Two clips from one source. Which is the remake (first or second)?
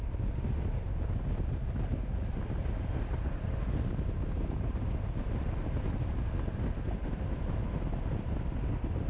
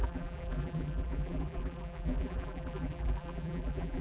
second